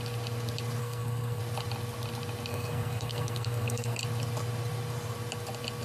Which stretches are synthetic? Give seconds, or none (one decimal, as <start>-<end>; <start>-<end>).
0.8-1.4; 2.5-4.0